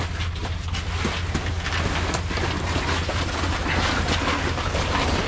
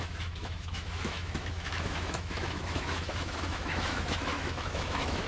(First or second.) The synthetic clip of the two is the second